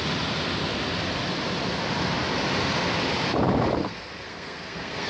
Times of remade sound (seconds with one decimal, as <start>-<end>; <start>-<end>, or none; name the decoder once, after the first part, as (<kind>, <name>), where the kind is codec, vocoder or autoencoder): 3.8-5.1 (codec, SNAC)